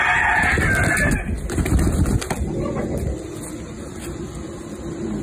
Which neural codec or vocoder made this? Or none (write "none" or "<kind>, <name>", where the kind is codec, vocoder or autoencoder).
none